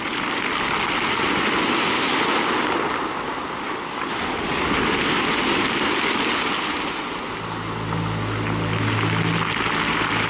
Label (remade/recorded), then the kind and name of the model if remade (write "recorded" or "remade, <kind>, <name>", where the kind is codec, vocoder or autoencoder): recorded